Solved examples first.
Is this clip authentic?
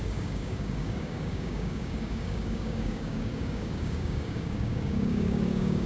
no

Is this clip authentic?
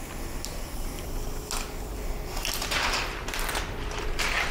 yes